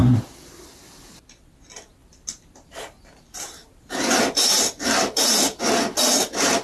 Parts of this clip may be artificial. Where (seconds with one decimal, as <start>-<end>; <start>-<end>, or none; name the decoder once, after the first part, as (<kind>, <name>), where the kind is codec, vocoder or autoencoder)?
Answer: 0.0-0.8 (vocoder, BigVGAN v2); 2.0-5.6